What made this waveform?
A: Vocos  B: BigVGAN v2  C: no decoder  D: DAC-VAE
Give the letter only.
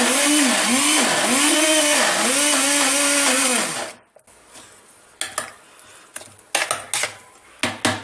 C